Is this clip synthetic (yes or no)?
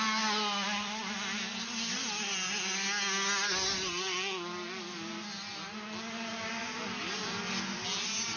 no